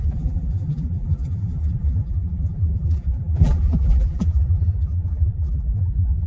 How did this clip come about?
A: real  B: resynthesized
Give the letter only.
B